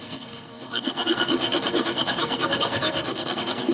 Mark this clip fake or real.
fake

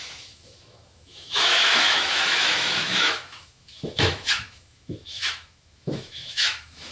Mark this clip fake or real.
fake